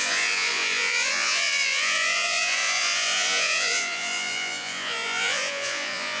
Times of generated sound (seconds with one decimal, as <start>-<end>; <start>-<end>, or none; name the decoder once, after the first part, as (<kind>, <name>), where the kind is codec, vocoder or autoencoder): 0.0-6.2 (vocoder, Vocos)